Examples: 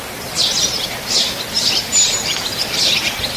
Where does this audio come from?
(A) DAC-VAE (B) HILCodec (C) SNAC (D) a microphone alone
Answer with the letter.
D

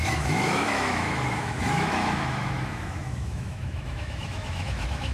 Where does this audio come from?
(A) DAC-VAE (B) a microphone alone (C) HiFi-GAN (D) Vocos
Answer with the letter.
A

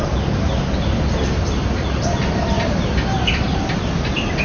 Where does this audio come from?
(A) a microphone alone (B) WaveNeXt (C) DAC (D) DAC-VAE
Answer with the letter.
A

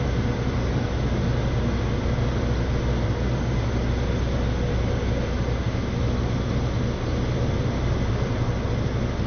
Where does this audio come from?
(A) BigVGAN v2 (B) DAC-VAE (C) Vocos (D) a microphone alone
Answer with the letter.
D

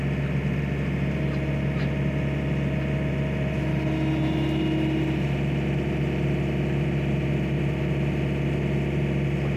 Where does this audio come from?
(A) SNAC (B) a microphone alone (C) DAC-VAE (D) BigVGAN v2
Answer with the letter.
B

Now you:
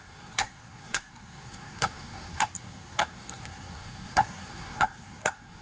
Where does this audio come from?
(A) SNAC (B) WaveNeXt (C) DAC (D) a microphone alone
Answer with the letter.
A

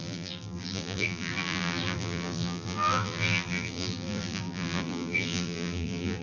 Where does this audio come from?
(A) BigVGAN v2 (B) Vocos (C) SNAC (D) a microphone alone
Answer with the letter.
A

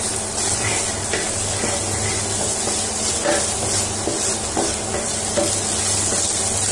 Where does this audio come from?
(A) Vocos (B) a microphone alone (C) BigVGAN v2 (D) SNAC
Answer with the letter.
B